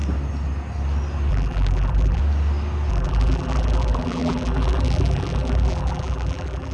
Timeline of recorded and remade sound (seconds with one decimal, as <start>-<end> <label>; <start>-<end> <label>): 0.0-1.3 recorded; 1.3-2.2 remade; 2.2-2.9 recorded; 2.9-6.7 remade